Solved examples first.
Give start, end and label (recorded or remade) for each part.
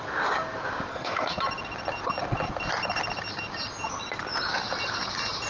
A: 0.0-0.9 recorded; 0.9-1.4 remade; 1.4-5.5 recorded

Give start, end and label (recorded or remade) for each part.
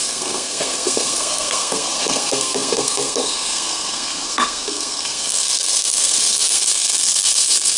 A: 0.0-7.8 remade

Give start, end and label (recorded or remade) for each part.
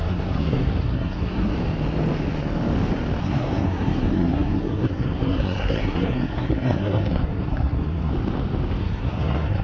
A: 0.0-1.5 remade; 1.5-3.2 recorded; 3.2-8.1 remade; 8.1-8.8 recorded; 8.8-9.6 remade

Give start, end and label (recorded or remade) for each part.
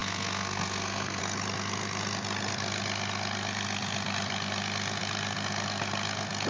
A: 0.0-1.2 remade; 1.2-6.5 recorded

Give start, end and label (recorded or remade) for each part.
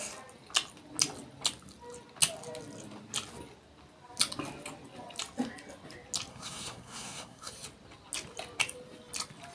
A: 0.0-6.3 recorded; 6.3-7.5 remade; 7.5-9.5 recorded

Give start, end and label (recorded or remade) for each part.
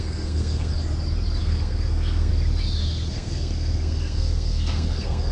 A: 0.0-0.7 remade; 0.7-1.4 recorded; 1.4-2.3 remade; 2.3-3.1 recorded; 3.1-5.3 remade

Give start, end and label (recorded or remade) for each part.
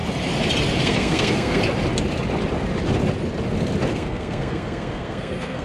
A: 0.0-0.8 recorded; 0.8-1.6 remade; 1.6-3.9 recorded; 3.9-5.6 remade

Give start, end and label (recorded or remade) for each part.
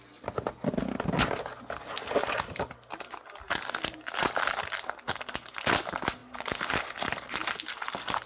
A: 0.0-8.3 recorded